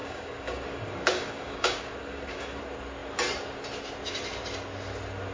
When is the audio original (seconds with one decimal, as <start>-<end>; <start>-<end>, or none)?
2.6-5.3